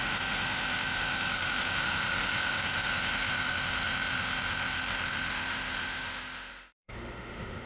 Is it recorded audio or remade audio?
remade